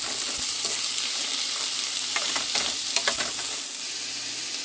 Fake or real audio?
real